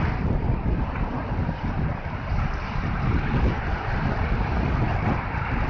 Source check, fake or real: real